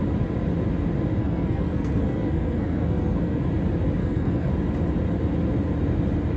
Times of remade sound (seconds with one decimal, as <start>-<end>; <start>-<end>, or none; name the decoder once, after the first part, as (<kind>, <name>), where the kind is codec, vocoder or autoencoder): 1.2-3.4 (codec, SNAC); 4.0-4.5